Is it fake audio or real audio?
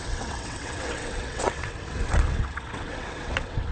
fake